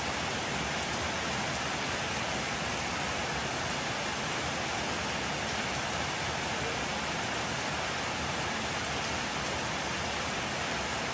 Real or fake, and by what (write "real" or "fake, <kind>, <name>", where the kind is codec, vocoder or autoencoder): real